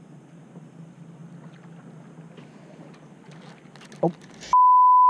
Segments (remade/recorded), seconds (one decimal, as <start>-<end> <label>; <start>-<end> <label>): 0.0-5.1 recorded